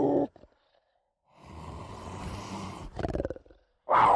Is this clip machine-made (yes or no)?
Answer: no